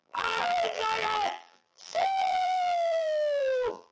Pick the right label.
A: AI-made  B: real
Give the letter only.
A